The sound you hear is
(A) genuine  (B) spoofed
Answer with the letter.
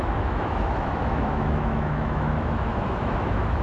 B